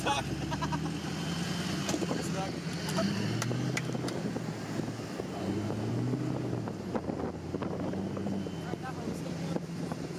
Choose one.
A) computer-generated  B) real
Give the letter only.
B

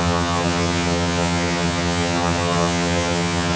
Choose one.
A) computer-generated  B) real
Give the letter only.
A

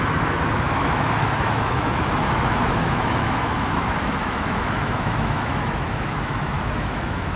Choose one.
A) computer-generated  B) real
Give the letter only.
A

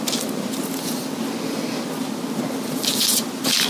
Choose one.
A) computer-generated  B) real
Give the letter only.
B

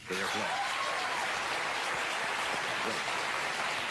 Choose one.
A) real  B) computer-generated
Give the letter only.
A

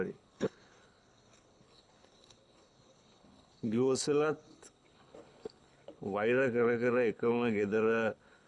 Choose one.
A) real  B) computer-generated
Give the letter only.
B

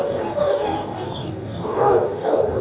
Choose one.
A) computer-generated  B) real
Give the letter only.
A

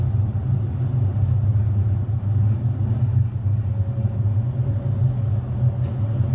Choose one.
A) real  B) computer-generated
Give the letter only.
A